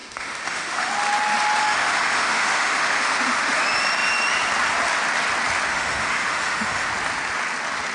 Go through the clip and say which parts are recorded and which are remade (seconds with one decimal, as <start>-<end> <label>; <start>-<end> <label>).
0.0-0.9 remade; 0.9-1.6 recorded; 1.6-3.6 remade; 3.6-5.7 recorded; 5.7-6.9 remade; 6.9-7.9 recorded